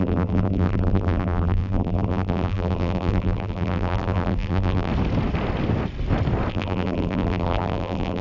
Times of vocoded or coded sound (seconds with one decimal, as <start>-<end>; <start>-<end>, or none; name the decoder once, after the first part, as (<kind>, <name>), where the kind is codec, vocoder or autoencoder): 0.0-4.9 (vocoder, BigVGAN v2); 6.5-8.2